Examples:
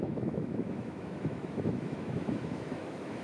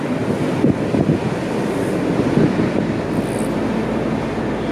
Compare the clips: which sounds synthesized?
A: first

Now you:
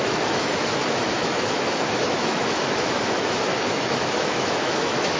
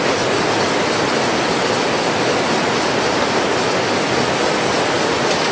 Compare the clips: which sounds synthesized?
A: first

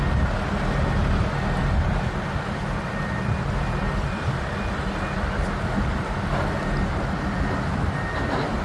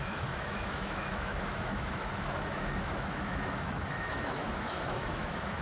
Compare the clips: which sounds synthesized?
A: second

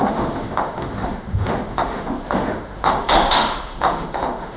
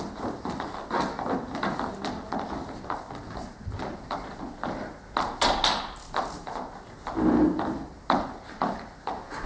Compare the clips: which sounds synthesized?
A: first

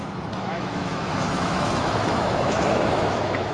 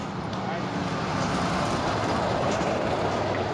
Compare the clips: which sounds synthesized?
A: first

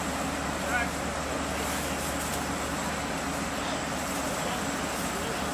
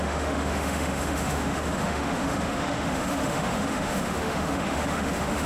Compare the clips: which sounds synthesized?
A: second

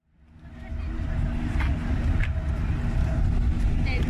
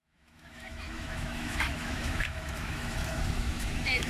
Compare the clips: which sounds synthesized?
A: second